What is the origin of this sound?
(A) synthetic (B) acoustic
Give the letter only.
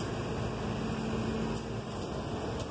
B